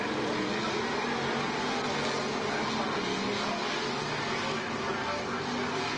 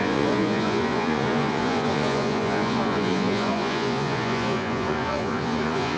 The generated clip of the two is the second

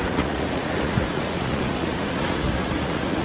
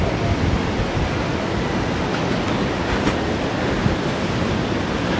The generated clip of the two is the first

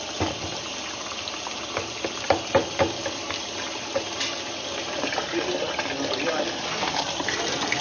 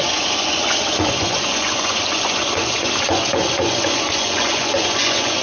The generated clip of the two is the second